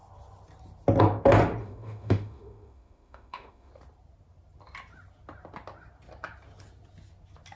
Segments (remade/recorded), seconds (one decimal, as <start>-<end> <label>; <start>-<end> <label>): 0.0-1.6 recorded; 1.6-3.7 remade; 3.7-7.6 recorded